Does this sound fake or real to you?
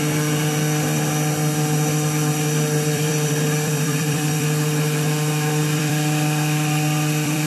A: fake